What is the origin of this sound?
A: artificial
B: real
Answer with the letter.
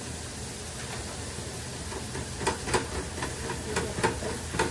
B